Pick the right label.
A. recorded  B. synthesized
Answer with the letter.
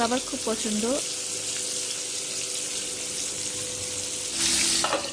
A